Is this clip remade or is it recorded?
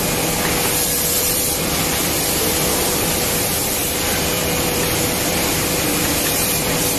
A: remade